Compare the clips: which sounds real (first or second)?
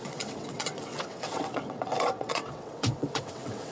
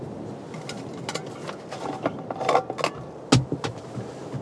second